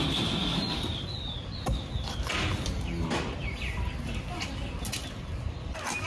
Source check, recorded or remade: recorded